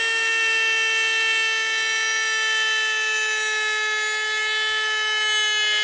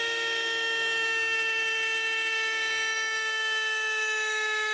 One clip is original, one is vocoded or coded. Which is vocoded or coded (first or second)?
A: second